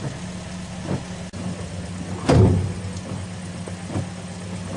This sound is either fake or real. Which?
real